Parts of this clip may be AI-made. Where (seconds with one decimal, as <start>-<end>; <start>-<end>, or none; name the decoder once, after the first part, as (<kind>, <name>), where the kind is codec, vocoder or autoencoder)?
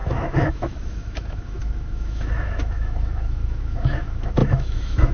0.0-5.1 (autoencoder, DAC-VAE)